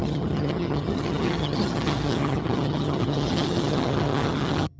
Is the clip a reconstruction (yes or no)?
yes